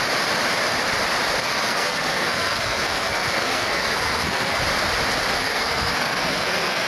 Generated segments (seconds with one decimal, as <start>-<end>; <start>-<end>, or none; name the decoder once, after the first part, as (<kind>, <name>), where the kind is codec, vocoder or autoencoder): 1.4-4.6 (codec, SNAC); 5.3-6.9

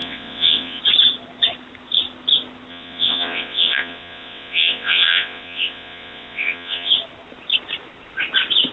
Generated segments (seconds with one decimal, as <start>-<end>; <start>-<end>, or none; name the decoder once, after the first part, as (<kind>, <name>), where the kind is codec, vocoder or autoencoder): 0.0-0.8 (vocoder, WaveNeXt); 2.7-6.9

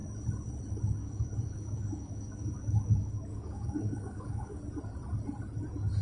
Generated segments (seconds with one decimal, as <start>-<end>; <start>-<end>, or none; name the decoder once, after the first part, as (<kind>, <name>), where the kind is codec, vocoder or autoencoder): 1.0-4.6 (codec, DAC)

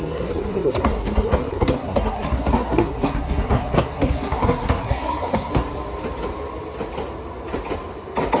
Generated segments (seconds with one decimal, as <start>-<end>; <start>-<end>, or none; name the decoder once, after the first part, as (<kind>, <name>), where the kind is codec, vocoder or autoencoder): 0.0-5.5 (codec, SNAC)

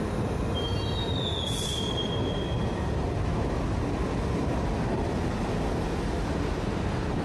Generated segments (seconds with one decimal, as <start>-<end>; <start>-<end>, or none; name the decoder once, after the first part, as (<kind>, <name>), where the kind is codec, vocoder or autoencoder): none